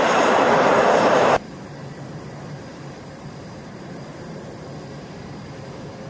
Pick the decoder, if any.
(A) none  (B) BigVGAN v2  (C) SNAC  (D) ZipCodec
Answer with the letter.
B